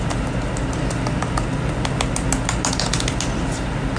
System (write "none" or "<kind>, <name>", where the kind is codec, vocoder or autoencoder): none